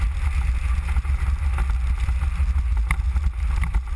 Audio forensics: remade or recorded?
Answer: recorded